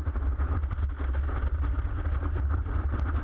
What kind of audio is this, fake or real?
real